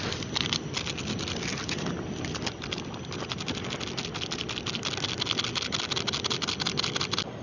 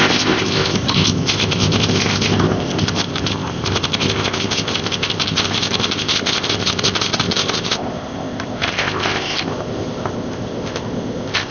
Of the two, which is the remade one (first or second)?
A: second